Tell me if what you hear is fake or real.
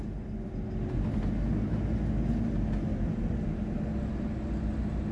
real